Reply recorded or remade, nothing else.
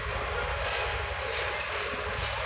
recorded